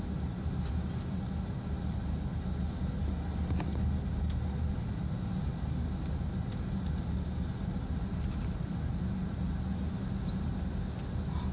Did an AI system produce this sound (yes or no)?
no